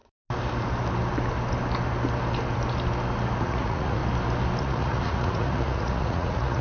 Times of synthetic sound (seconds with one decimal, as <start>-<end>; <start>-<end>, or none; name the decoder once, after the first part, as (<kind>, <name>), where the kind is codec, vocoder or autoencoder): 3.4-4.0 (vocoder, Vocos); 4.6-6.6